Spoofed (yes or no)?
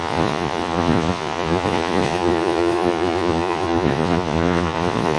yes